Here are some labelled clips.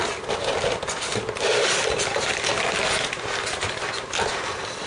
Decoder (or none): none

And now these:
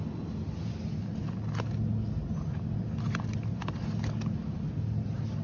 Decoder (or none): none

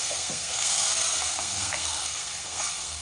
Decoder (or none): codec, SNAC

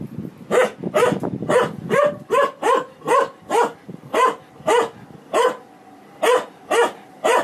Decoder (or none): none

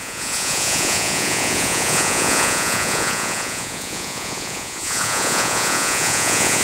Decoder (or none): vocoder, Vocos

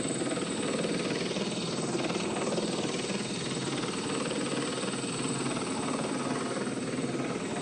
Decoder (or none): vocoder, BigVGAN v2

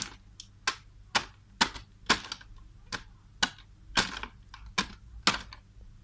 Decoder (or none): none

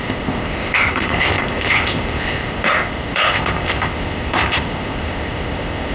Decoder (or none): codec, ZipCodec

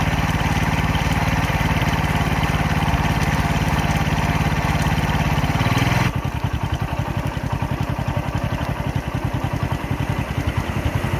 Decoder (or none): none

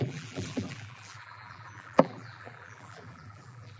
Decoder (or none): vocoder, BigVGAN v2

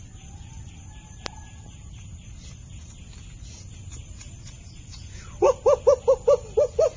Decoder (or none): none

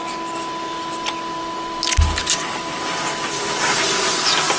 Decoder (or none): none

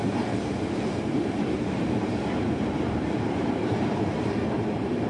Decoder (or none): vocoder, BigVGAN v2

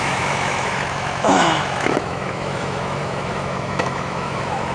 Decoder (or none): autoencoder, DAC-VAE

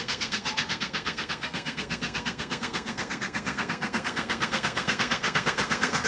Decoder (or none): codec, SNAC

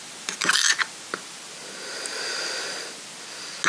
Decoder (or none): none